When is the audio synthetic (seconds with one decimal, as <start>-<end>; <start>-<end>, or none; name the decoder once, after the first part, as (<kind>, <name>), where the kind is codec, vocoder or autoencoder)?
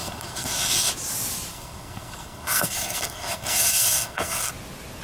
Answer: 0.0-0.9 (codec, SNAC); 1.5-4.5